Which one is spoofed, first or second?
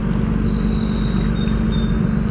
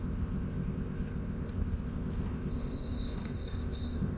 second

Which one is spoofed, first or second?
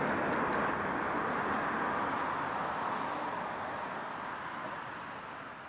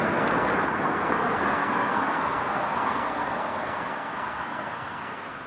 second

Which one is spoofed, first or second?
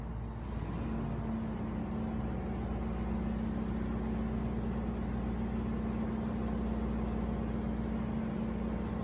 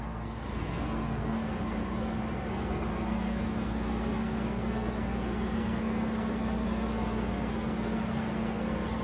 second